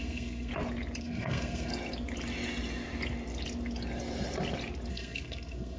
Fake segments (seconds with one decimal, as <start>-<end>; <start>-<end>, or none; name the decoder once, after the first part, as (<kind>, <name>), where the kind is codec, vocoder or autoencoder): 0.0-0.5 (codec, SNAC); 1.0-1.7; 4.9-5.8

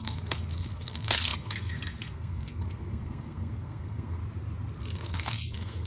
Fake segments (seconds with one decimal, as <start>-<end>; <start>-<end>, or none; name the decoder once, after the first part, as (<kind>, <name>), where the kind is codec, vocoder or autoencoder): 0.0-4.2 (codec, SNAC); 4.8-5.9